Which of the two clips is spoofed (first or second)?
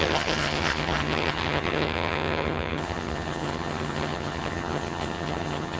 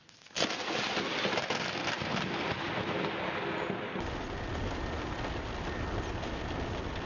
first